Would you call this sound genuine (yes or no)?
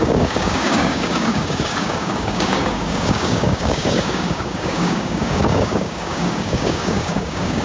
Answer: no